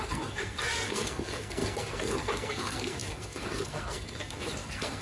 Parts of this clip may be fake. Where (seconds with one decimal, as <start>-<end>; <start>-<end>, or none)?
0.0-5.0